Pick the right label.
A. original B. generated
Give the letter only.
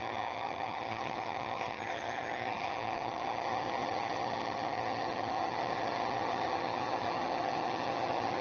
B